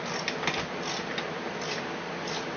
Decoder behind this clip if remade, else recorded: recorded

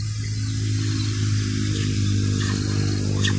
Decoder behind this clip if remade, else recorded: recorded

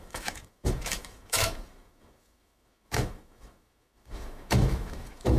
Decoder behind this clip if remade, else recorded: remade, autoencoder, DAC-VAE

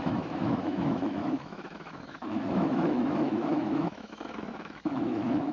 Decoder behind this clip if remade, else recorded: remade, autoencoder, DAC-VAE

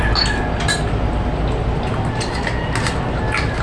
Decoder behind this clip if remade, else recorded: recorded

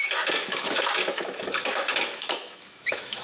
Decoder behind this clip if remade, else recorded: remade, autoencoder, DAC-VAE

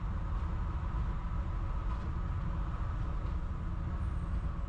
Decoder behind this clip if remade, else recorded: recorded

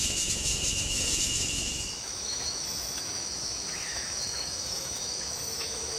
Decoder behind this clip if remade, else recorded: remade, autoencoder, DAC-VAE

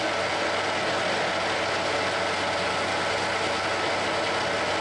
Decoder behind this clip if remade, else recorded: recorded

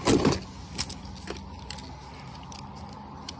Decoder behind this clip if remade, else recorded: recorded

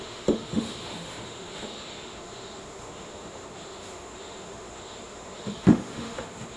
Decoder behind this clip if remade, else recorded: remade, autoencoder, DAC-VAE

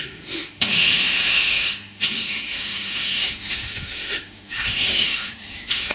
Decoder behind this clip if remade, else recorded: remade, autoencoder, DAC-VAE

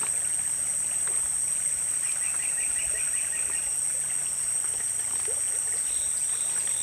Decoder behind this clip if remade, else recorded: recorded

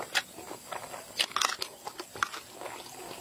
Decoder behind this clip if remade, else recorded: recorded